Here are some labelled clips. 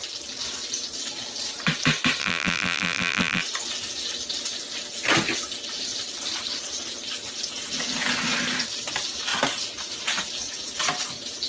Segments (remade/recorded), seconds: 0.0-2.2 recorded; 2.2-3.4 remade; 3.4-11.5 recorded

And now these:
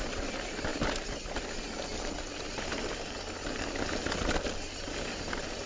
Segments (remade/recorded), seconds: 0.0-5.7 recorded

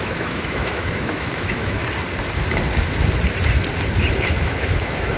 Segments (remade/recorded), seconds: 0.0-1.8 remade; 1.8-4.3 recorded; 4.3-5.2 remade

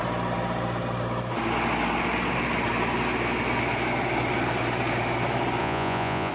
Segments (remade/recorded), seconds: 0.0-5.6 recorded; 5.6-6.3 remade

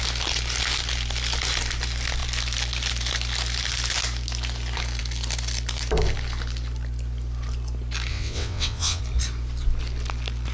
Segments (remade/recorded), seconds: 0.0-8.1 recorded; 8.1-9.0 remade; 9.0-10.5 recorded

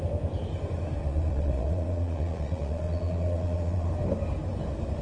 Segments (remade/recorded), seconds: 0.0-1.0 recorded; 1.0-3.9 remade; 3.9-5.0 recorded